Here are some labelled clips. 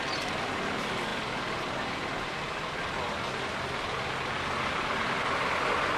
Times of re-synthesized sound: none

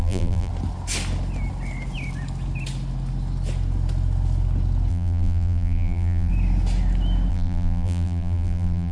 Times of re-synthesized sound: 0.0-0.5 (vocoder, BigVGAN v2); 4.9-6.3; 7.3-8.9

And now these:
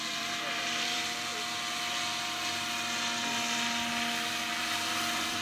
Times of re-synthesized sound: 0.0-1.3 (vocoder, BigVGAN v2); 4.5-5.4